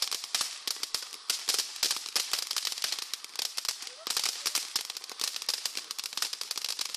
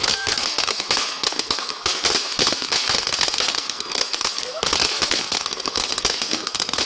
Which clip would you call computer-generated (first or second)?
second